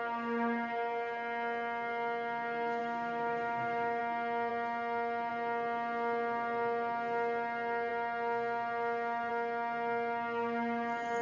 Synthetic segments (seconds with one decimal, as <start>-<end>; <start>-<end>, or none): 2.8-4.0